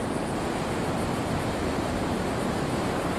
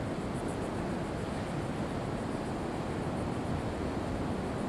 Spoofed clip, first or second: first